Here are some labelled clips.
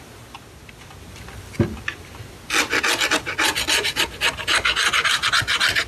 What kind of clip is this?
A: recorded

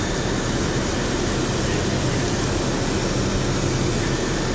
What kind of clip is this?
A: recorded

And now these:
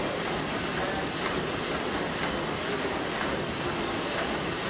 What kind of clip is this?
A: recorded